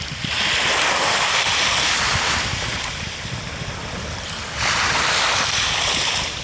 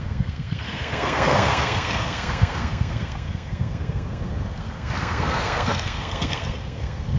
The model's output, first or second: second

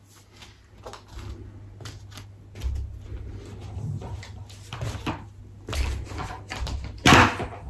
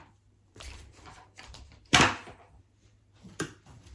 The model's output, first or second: second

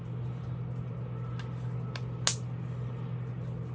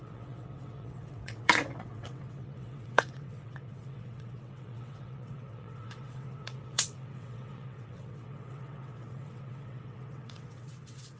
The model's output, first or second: second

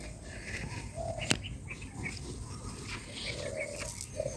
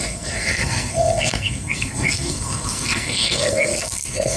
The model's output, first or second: second